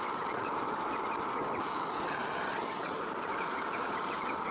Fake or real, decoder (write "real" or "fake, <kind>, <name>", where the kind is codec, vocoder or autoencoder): real